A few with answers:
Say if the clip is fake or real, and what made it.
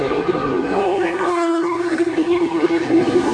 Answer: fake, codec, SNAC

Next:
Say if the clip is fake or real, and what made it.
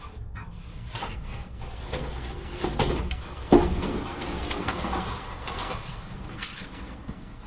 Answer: fake, codec, SNAC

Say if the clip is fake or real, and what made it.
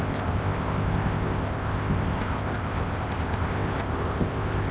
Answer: fake, codec, ZipCodec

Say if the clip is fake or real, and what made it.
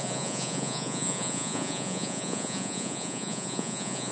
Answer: fake, vocoder, Vocos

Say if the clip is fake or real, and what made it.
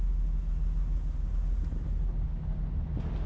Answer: real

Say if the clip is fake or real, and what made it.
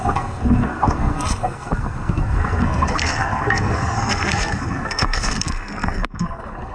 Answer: fake, codec, SNAC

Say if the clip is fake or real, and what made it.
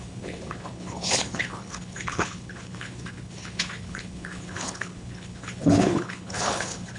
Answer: fake, codec, HILCodec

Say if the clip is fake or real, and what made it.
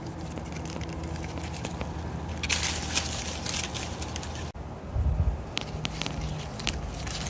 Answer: real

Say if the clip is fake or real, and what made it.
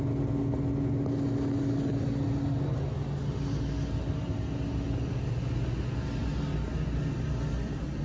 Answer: real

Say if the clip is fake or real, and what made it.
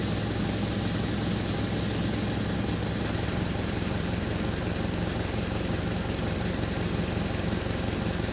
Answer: real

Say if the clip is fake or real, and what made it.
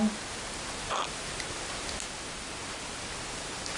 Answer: real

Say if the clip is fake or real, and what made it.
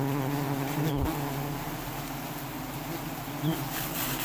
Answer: real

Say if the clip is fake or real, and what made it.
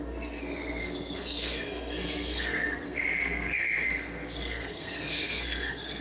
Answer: fake, codec, SNAC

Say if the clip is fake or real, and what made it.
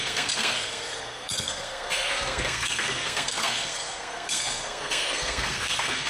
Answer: fake, codec, SNAC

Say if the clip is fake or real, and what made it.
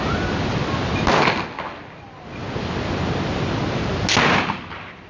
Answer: real